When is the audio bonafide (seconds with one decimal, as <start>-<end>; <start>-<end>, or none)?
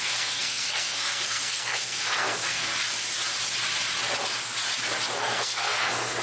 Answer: 2.7-5.2